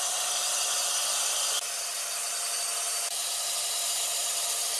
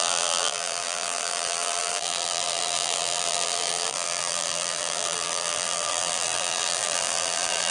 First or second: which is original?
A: first